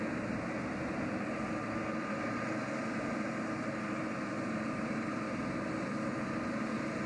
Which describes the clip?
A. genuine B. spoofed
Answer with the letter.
A